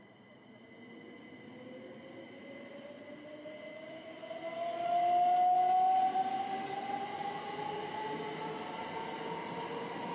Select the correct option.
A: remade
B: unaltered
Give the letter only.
B